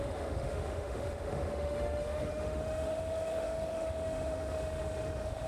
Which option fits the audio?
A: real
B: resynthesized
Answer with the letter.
B